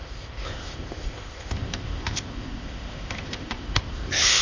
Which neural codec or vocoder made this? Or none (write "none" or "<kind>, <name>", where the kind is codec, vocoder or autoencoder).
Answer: codec, ZipCodec